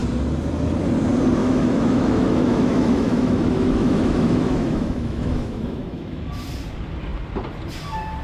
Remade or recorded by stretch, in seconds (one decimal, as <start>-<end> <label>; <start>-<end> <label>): 0.0-1.4 recorded; 1.4-6.3 remade; 6.3-8.2 recorded